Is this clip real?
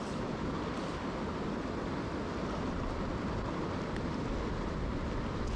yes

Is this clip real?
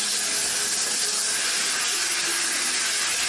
yes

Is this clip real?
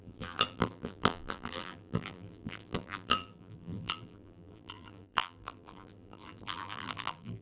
no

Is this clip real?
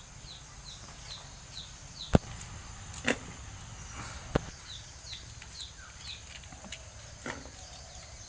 yes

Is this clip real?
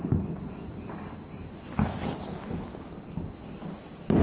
yes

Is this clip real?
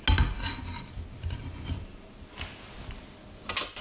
yes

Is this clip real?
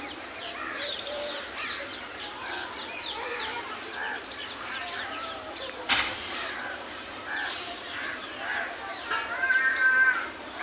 no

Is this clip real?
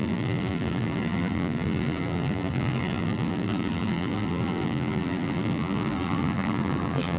no